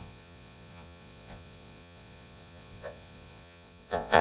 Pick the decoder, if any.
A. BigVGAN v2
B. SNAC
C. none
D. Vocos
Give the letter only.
D